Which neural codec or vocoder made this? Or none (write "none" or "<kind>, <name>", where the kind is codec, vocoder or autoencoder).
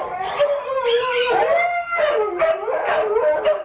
vocoder, BigVGAN v2